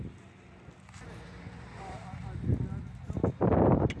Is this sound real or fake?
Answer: real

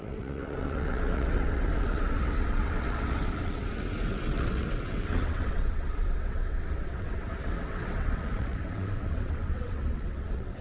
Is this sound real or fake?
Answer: fake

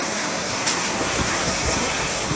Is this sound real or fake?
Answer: fake